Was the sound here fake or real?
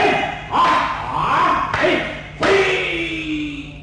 real